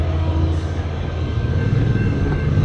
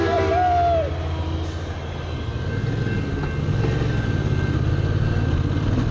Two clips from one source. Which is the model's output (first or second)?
first